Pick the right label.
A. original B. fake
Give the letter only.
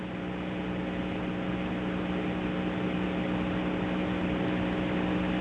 A